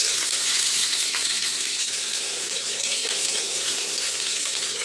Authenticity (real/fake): fake